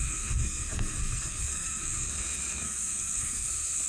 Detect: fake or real fake